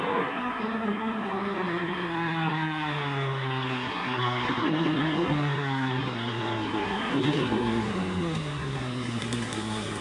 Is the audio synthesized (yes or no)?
yes